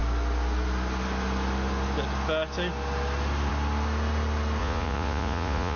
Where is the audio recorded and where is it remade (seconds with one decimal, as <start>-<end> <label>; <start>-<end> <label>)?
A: 0.0-4.6 recorded; 4.6-5.8 remade